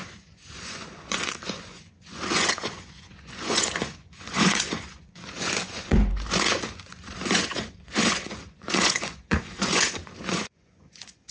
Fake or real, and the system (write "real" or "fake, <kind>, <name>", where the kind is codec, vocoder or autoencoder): fake, vocoder, Vocos